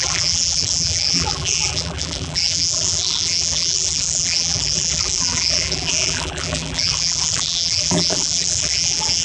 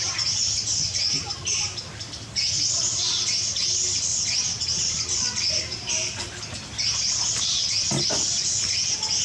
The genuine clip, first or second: second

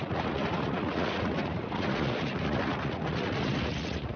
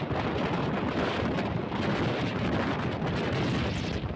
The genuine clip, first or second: second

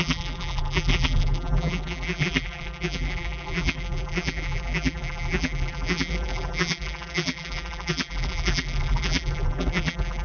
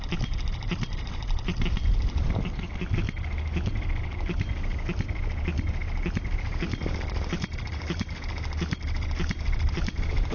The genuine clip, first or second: second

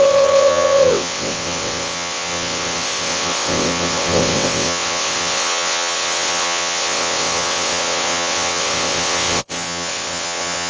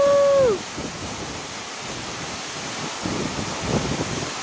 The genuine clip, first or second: second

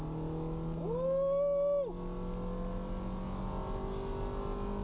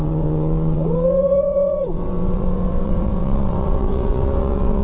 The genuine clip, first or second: first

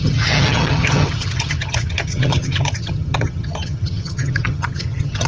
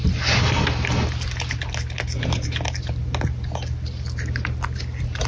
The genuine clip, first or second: second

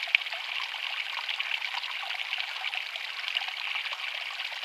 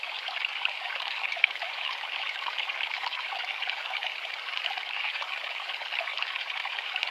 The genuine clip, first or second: first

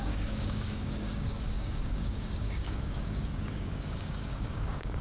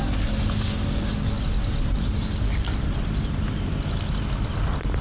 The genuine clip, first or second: second